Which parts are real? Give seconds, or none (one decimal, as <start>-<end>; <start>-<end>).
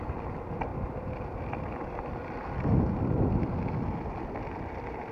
0.0-0.7; 1.4-5.1